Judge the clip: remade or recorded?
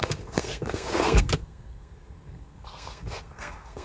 remade